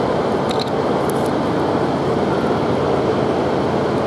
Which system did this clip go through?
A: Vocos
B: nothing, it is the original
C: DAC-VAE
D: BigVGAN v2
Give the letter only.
B